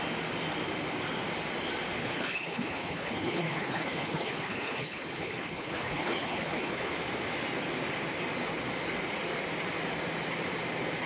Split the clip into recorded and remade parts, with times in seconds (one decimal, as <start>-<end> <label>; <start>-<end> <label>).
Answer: 0.0-2.0 recorded; 2.0-6.9 remade; 6.9-11.1 recorded